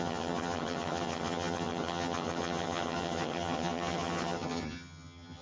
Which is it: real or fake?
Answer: fake